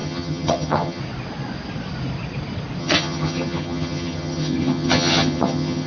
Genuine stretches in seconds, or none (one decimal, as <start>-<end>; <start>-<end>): 1.0-2.8